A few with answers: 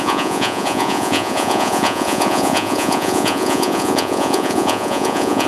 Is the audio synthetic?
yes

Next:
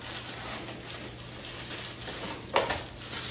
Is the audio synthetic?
no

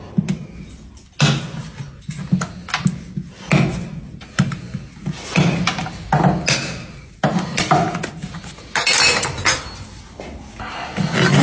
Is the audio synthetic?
no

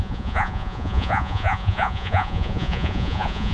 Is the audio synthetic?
yes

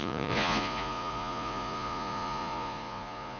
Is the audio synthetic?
yes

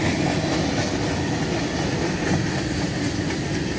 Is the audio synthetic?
no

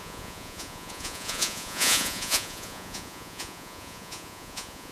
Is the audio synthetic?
yes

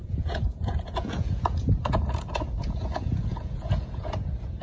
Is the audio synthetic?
yes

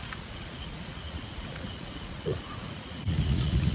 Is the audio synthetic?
yes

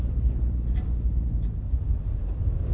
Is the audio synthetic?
no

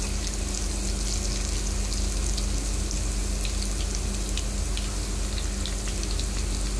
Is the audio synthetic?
no